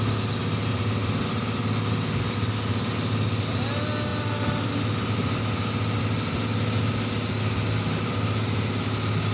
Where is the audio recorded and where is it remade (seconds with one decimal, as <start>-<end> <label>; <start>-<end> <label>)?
0.0-9.3 recorded